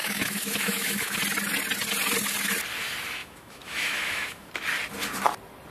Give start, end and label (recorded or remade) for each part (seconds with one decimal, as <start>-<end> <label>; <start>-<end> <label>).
0.0-1.2 remade; 1.2-3.2 recorded; 3.2-4.5 remade; 4.5-5.7 recorded